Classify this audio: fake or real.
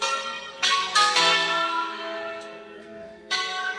fake